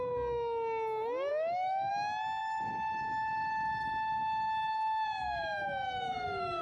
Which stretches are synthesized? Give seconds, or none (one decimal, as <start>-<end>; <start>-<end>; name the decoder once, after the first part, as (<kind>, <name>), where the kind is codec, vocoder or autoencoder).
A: 1.3-1.9 (autoencoder, DAC-VAE); 2.4-6.6